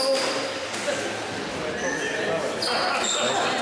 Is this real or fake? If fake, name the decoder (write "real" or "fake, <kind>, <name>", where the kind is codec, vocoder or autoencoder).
real